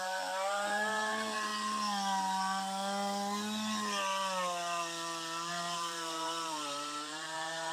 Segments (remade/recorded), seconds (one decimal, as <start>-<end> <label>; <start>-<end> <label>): 0.0-1.5 remade; 1.5-5.5 recorded; 5.5-7.7 remade